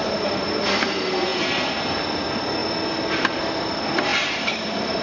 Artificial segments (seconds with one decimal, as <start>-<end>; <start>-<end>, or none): 0.0-0.6; 4.1-5.0